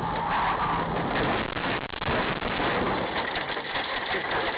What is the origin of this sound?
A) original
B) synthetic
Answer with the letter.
A